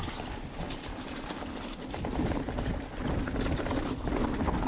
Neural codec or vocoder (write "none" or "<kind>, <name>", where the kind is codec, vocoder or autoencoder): none